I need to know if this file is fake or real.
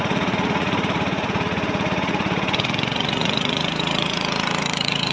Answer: fake